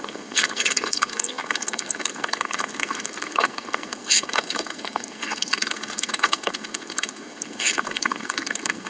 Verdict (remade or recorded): remade